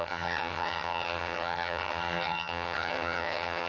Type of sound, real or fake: fake